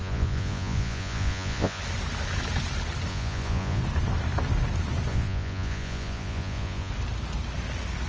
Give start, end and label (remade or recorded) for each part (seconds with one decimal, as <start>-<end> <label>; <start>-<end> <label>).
0.0-1.8 remade; 1.8-3.1 recorded; 3.1-3.8 remade; 3.8-5.1 recorded; 5.1-6.9 remade; 6.9-8.1 recorded